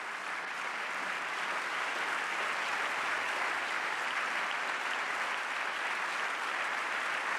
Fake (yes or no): no